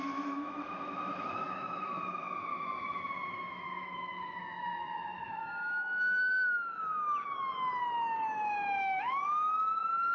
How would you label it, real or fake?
fake